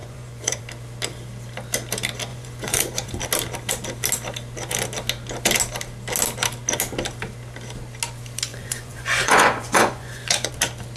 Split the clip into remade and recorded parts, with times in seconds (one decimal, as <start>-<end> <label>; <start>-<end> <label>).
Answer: 0.0-0.6 remade; 0.6-2.3 recorded; 2.3-3.2 remade; 3.2-8.5 recorded; 8.5-10.5 remade; 10.5-11.0 recorded